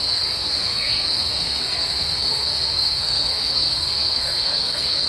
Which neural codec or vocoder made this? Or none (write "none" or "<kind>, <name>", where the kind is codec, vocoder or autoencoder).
codec, SNAC